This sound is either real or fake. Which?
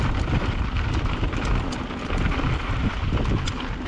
real